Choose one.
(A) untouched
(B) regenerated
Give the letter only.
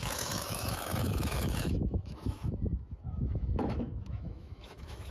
B